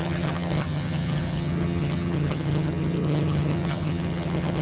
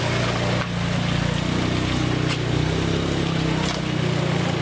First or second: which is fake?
first